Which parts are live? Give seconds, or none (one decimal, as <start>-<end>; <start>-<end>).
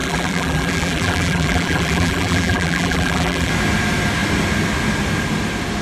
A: 3.5-5.8